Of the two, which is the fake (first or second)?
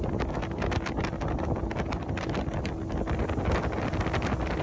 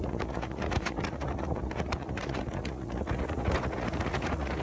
second